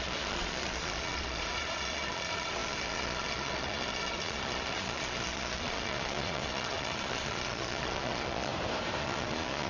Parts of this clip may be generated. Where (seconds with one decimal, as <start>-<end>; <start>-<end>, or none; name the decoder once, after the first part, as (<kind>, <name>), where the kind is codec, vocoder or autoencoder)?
0.0-8.5 (vocoder, Vocos); 9.0-9.7